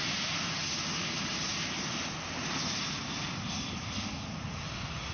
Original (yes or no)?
yes